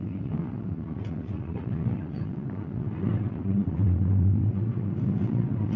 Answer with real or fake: fake